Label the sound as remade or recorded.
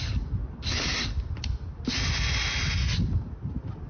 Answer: recorded